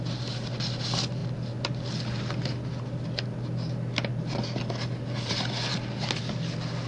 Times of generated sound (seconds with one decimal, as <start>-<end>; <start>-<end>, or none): none